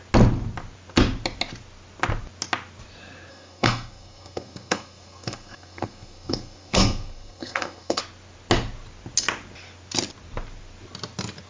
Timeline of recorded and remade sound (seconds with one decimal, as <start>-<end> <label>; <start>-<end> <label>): 0.0-3.3 recorded; 3.3-8.0 remade; 8.0-11.5 recorded